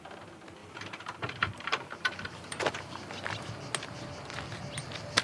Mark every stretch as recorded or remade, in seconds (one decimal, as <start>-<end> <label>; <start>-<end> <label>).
0.0-0.6 recorded; 0.6-3.5 remade; 3.5-5.2 recorded